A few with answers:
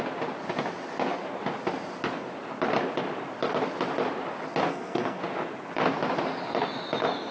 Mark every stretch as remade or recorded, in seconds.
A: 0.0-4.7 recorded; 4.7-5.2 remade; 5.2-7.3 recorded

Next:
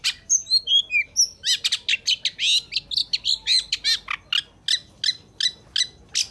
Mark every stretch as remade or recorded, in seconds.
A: 0.0-6.3 recorded

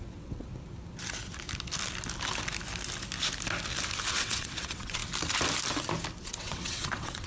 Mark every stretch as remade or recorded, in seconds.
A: 0.0-0.5 remade; 0.5-4.1 recorded; 4.1-5.0 remade; 5.0-6.2 recorded; 6.2-7.3 remade

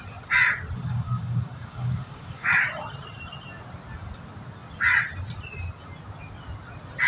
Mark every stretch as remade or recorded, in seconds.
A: 0.0-0.9 recorded; 0.9-2.6 remade; 2.6-7.1 recorded

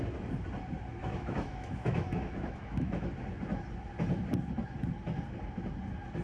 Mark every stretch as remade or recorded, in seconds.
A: 0.0-1.0 recorded; 1.0-3.1 remade; 3.1-6.2 recorded

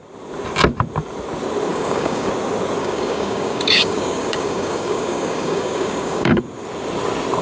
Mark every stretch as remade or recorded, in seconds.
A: 0.0-1.7 recorded; 1.7-2.3 remade; 2.3-2.8 recorded; 2.8-6.4 remade; 6.4-7.4 recorded